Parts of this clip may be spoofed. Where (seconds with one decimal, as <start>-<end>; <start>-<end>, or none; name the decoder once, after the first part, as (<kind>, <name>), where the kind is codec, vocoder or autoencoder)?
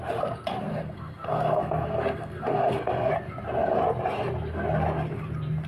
0.7-3.1 (codec, SNAC)